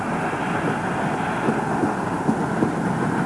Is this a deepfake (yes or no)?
no